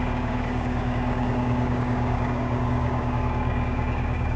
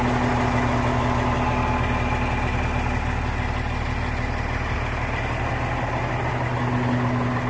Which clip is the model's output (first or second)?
first